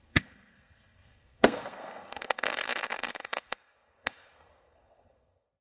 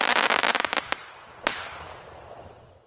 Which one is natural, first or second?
second